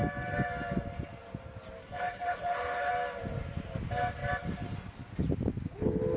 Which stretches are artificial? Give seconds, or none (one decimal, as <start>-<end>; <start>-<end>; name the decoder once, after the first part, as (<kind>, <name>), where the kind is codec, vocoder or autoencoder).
1.8-2.9 (codec, HILCodec)

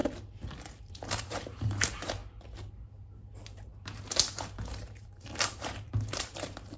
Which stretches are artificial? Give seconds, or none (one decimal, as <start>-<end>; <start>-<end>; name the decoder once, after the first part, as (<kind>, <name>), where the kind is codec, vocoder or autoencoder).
0.8-2.2 (vocoder, BigVGAN v2); 4.6-6.8